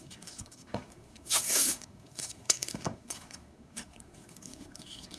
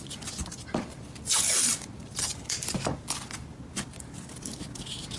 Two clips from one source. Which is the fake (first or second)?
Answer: first